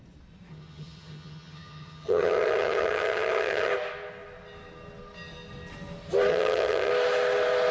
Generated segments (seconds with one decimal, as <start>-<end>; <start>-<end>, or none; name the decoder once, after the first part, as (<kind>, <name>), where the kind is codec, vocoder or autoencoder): 0.5-3.7 (vocoder, HiFi-GAN); 6.3-6.9